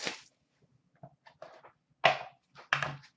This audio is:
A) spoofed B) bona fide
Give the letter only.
B